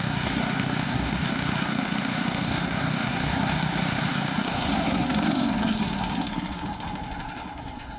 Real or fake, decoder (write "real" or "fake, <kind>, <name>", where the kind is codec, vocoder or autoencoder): fake, codec, SNAC